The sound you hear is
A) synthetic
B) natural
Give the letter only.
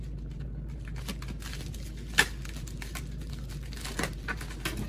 B